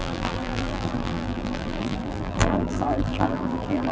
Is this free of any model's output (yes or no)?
no